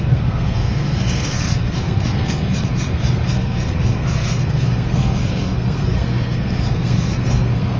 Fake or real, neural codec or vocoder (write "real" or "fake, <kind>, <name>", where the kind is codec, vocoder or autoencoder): fake, codec, SNAC